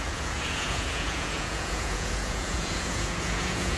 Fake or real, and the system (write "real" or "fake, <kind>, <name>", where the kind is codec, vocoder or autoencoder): fake, vocoder, Vocos